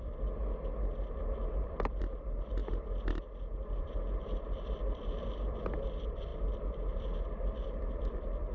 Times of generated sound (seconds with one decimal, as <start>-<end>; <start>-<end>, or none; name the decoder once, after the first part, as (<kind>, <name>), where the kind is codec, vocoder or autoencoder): 0.0-0.4 (vocoder, BigVGAN v2); 1.2-2.6; 3.8-8.5